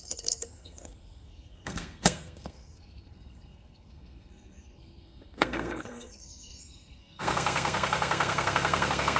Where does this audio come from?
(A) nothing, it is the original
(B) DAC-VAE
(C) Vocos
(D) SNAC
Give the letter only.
D